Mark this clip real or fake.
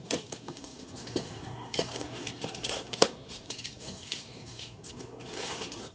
fake